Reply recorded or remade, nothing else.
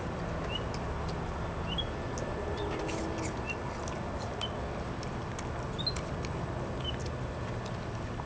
recorded